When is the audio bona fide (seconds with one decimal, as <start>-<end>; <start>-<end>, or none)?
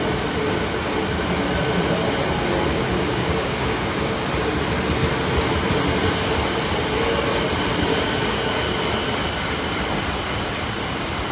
0.0-2.7; 4.2-7.9; 8.6-11.3